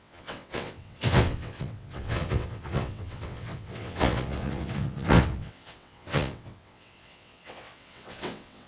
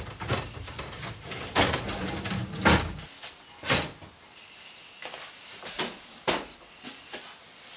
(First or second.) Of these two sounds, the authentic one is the second